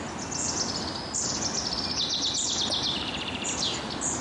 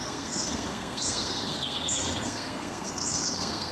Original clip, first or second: first